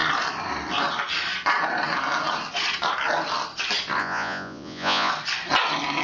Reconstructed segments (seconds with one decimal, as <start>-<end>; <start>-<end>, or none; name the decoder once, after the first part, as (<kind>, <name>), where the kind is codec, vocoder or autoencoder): 4.0-5.1 (vocoder, Vocos)